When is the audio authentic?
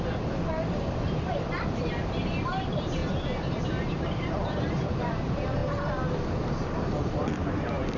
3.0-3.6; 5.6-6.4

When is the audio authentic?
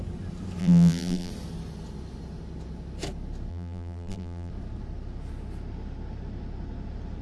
0.0-0.6; 1.3-3.5; 4.5-7.2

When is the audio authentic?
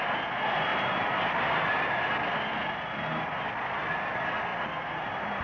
0.0-0.7; 1.8-4.5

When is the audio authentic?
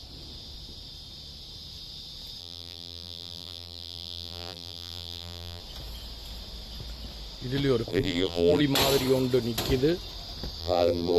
0.0-2.4; 5.6-7.9; 8.6-10.6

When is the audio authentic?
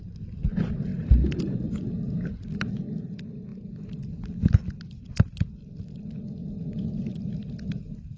0.0-0.9; 1.5-3.5; 4.3-8.2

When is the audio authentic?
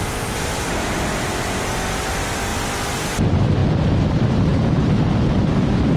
2.5-3.2; 3.6-4.1; 4.5-6.0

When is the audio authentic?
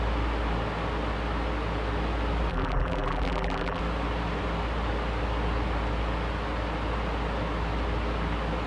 0.0-2.5; 3.8-8.7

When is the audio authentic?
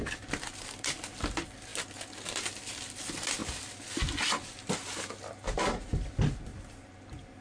0.0-6.5